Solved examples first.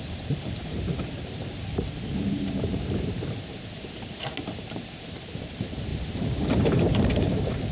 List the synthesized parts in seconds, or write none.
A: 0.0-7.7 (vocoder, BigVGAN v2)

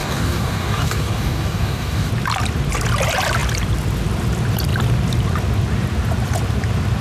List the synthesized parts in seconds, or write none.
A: 0.0-2.1 (codec, DAC)

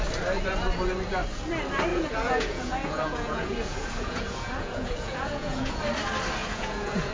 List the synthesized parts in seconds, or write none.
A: 1.9-5.8 (vocoder, Vocos); 6.4-7.1

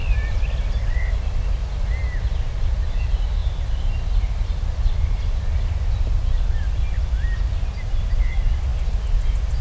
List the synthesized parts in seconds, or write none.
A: none